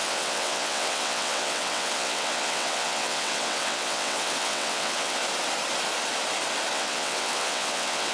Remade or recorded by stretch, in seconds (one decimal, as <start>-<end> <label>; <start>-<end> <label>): 0.0-5.2 remade; 5.2-6.7 recorded; 6.7-8.1 remade